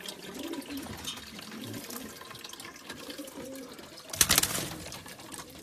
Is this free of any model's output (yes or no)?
yes